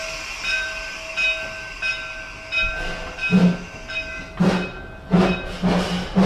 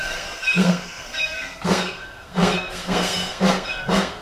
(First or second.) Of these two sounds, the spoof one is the second